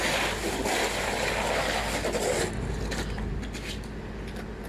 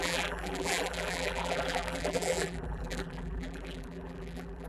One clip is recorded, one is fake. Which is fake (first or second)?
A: second